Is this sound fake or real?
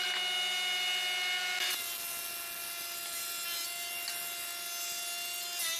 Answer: real